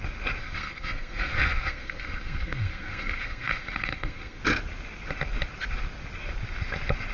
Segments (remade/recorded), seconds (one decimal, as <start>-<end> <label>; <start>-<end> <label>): 0.0-0.4 recorded; 0.4-4.4 remade; 4.4-7.1 recorded